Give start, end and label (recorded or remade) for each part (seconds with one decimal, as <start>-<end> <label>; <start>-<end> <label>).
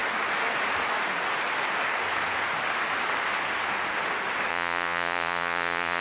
0.0-4.5 recorded; 4.5-6.0 remade